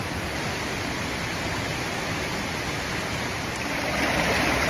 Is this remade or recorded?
recorded